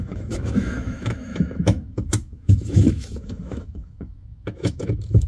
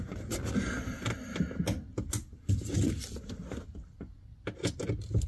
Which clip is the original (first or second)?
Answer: second